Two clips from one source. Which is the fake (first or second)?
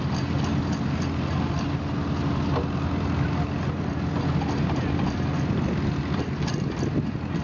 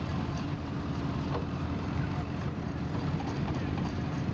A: second